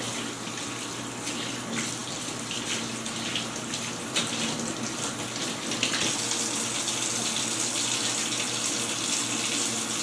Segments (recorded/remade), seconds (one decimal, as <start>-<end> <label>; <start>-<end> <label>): 0.0-2.0 recorded; 2.0-2.7 remade; 2.7-10.0 recorded